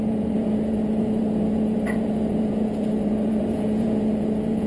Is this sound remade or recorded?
remade